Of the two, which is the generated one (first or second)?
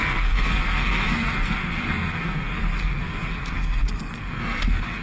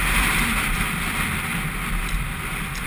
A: first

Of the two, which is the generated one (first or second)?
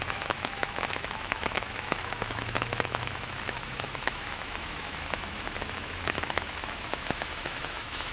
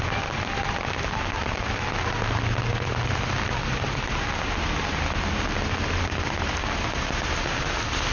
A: first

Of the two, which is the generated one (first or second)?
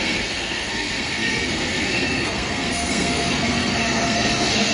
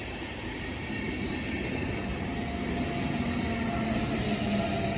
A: first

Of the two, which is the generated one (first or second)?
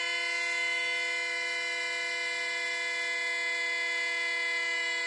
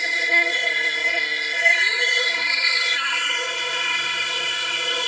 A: second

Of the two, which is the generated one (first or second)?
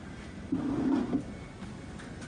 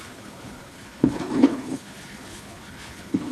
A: second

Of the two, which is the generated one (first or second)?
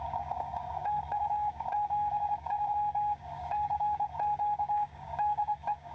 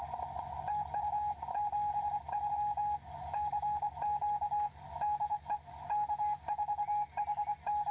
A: first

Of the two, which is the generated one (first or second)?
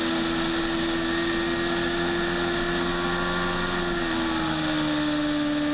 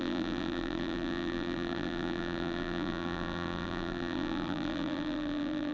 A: second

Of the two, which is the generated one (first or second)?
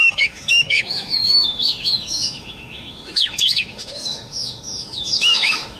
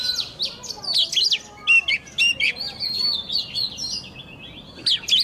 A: first